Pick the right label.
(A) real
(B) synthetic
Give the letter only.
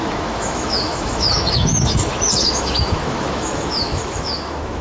B